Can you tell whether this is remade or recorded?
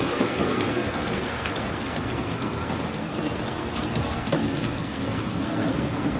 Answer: remade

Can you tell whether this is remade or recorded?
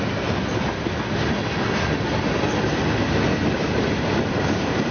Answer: recorded